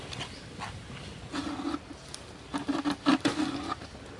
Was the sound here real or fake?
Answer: fake